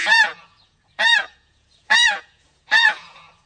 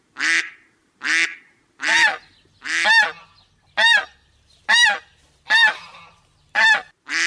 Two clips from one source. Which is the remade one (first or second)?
first